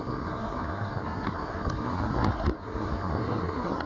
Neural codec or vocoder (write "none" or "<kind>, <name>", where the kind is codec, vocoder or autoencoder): codec, SNAC